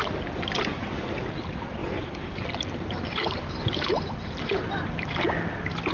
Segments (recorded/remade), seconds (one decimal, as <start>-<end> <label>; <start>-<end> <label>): 0.0-1.8 recorded; 1.8-5.3 remade; 5.3-5.9 recorded

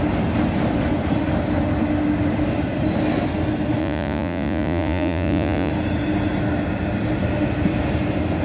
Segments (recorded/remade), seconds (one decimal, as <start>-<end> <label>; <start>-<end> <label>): 0.0-3.8 recorded; 3.8-5.7 remade; 5.7-8.4 recorded